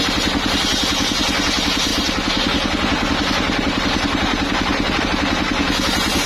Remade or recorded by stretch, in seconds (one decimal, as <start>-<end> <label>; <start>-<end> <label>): 0.0-6.3 recorded